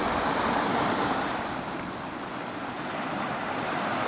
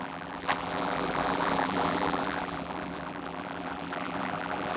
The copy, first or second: second